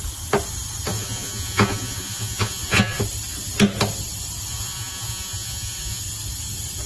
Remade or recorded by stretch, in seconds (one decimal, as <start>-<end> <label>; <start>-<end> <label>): 0.0-0.9 recorded; 0.9-3.0 remade; 3.0-4.5 recorded; 4.5-6.0 remade; 6.0-6.9 recorded